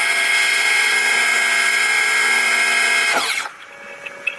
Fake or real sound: real